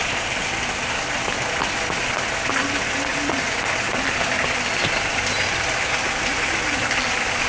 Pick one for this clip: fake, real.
real